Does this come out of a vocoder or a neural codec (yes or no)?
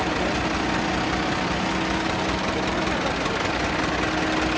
no